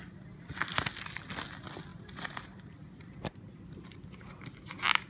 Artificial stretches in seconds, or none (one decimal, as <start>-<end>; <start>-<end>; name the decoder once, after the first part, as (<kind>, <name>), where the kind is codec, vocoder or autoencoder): none